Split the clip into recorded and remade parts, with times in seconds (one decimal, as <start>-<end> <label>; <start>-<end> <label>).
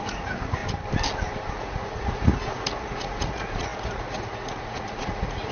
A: 0.0-0.6 remade; 0.6-1.5 recorded; 1.5-5.5 remade